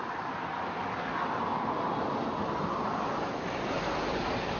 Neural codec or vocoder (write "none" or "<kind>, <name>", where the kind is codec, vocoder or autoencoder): none